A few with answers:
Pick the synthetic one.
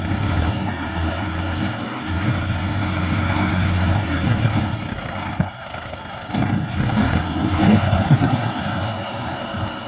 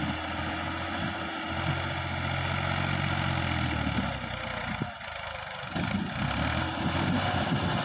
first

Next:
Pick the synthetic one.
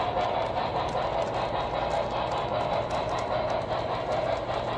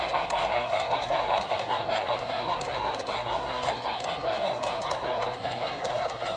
second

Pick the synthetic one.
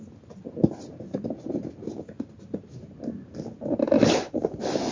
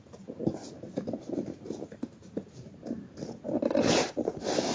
second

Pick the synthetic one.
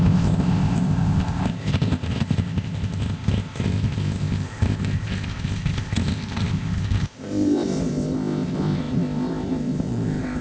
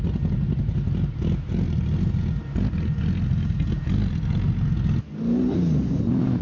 first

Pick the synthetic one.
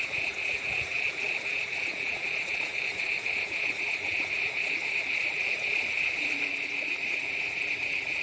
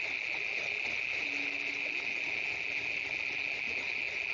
first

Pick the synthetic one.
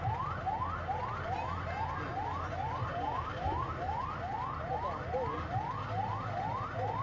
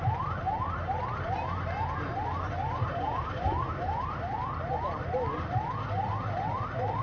second